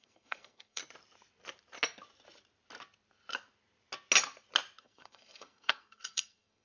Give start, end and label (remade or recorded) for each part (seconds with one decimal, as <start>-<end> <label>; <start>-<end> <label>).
0.0-0.8 remade; 0.8-4.8 recorded; 4.8-6.6 remade